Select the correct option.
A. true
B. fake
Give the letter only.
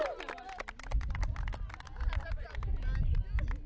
A